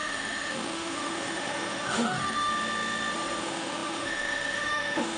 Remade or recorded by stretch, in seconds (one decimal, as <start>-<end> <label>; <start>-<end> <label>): 0.0-2.5 remade; 2.5-3.4 recorded; 3.4-5.2 remade